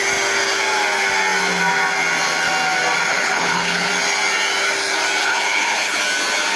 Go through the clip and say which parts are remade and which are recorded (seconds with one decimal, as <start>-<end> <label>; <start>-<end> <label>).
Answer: 0.0-3.1 recorded; 3.1-3.9 remade; 3.9-5.2 recorded; 5.2-6.0 remade; 6.0-6.6 recorded